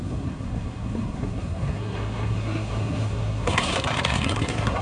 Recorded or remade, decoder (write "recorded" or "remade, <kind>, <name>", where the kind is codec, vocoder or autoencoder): remade, codec, SNAC